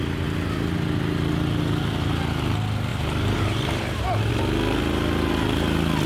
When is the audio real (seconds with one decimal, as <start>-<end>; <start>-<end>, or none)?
0.0-2.9; 4.3-6.1